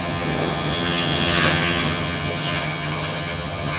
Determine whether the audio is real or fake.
fake